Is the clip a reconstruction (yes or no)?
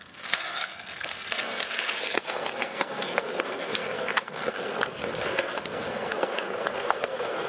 yes